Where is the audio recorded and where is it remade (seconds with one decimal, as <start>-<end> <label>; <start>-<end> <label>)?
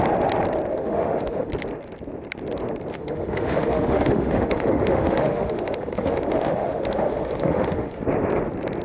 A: 0.0-0.7 recorded; 0.7-1.5 remade; 1.5-2.9 recorded; 2.9-8.0 remade; 8.0-8.8 recorded